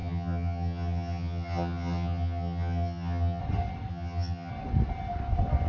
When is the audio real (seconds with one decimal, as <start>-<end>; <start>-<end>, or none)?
3.4-3.9; 4.5-5.7